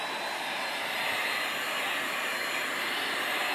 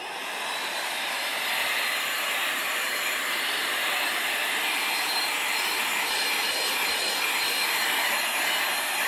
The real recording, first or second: first